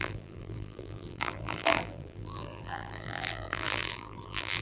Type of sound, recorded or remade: remade